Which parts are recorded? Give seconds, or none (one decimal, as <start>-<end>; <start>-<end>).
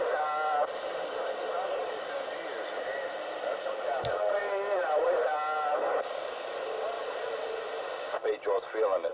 none